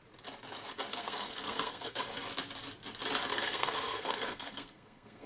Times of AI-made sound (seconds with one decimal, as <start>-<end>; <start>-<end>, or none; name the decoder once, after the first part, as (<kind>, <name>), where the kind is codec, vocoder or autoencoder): 0.9-2.0 (codec, SNAC); 3.3-5.3